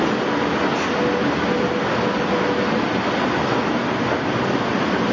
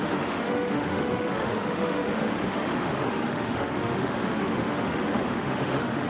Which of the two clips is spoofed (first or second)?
second